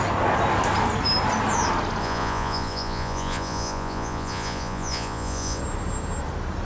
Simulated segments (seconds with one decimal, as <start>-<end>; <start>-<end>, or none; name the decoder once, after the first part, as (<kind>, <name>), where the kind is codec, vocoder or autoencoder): 2.0-5.6 (vocoder, Vocos)